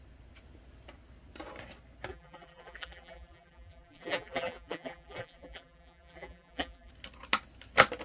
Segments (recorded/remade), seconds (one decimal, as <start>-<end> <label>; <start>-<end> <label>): 0.0-2.1 recorded; 2.1-6.9 remade; 6.9-8.0 recorded